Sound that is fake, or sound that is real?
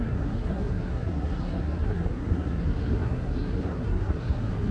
fake